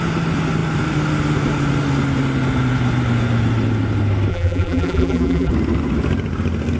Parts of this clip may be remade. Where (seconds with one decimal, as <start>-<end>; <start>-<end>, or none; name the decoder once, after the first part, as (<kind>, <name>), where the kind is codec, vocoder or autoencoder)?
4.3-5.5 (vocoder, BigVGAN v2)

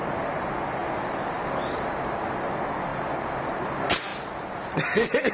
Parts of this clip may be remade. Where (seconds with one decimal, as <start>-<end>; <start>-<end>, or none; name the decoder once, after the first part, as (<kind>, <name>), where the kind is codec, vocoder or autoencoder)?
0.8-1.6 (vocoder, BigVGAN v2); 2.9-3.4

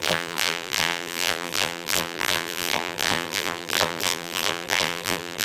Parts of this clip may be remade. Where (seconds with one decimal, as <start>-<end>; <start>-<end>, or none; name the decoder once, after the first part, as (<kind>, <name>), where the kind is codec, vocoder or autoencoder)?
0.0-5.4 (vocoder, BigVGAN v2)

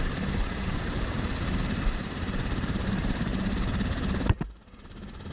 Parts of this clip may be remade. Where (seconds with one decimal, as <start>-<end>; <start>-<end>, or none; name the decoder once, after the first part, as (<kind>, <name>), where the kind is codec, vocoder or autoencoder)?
0.0-3.3 (vocoder, BigVGAN v2)

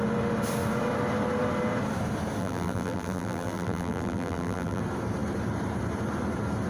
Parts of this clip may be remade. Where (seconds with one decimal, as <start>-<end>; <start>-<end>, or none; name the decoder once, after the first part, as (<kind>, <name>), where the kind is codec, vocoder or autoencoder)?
2.4-4.8 (vocoder, BigVGAN v2)

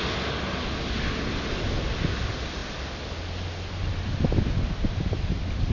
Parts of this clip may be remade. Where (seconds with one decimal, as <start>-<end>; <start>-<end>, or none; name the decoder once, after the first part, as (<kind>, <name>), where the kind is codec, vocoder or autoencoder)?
none

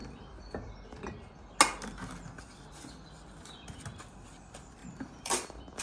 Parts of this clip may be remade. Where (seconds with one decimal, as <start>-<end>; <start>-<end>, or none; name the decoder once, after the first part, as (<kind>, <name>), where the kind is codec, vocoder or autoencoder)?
4.8-5.8 (vocoder, BigVGAN v2)

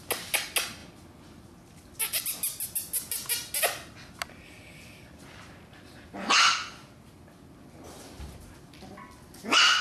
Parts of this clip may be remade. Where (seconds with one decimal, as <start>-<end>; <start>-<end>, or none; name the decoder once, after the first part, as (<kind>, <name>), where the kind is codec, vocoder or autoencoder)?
none